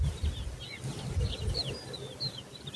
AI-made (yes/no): no